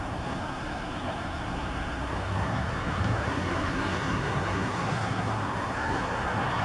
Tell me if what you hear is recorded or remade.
remade